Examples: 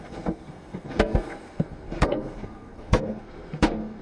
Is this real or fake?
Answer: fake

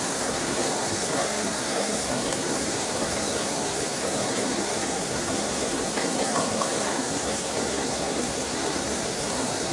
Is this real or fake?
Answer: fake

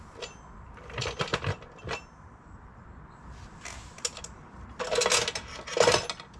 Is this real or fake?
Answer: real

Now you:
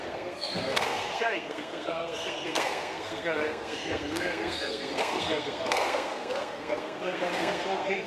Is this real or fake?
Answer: fake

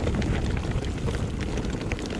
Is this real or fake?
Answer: real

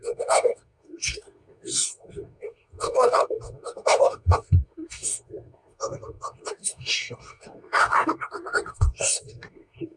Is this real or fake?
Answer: fake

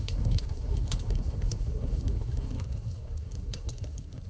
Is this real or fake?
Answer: fake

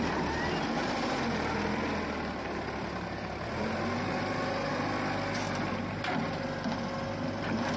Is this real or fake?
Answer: real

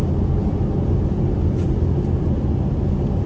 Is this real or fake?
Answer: real